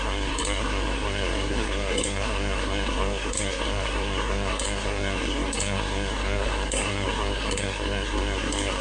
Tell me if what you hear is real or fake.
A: fake